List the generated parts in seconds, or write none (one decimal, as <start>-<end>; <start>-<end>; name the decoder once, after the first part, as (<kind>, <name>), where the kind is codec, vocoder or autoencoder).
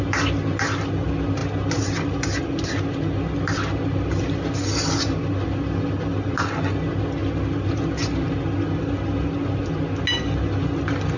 none